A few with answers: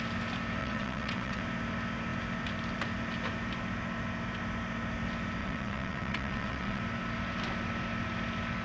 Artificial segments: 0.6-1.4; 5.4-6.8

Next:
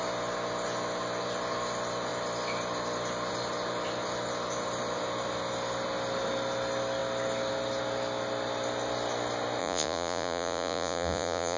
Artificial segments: 9.6-11.6

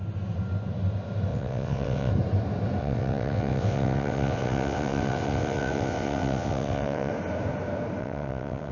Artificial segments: 1.3-2.1; 2.8-7.1; 8.0-8.7

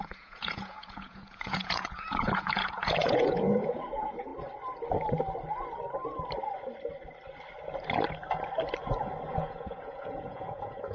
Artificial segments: 0.0-4.3; 9.3-10.9